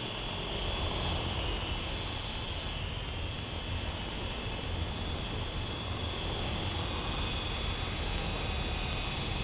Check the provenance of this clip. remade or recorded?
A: recorded